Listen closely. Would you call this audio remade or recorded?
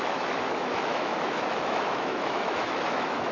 remade